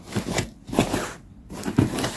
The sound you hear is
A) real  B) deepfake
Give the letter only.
A